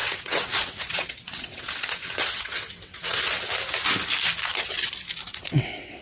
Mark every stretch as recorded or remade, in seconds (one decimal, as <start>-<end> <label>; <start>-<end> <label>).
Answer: 0.0-3.5 remade; 3.5-5.3 recorded; 5.3-6.0 remade